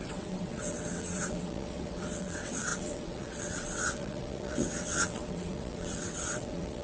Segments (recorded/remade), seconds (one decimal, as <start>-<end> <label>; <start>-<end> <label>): 0.0-6.8 remade